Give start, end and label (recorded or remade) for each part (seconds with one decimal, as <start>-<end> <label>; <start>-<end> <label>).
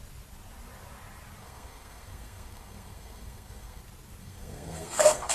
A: 0.0-1.4 recorded; 1.4-3.8 remade; 3.8-4.2 recorded; 4.2-5.3 remade